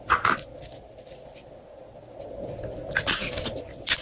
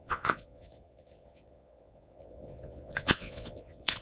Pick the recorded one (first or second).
first